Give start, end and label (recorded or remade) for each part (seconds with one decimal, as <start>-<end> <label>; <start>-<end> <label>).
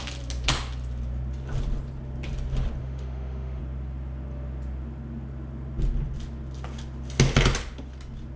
0.0-2.8 recorded; 2.8-3.6 remade; 3.6-8.4 recorded